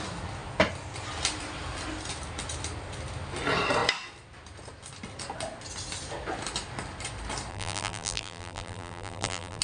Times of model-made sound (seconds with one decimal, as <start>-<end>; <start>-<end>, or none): 7.5-9.6